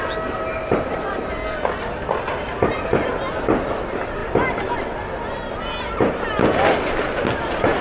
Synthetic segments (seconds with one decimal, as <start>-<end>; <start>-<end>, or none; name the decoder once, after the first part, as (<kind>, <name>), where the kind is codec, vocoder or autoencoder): 2.3-3.2 (vocoder, BigVGAN v2)